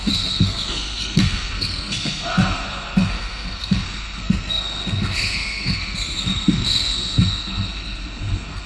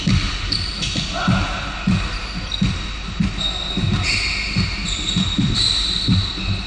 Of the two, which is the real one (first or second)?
second